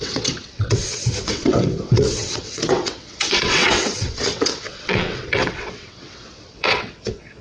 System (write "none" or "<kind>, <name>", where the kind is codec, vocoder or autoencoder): vocoder, WaveNeXt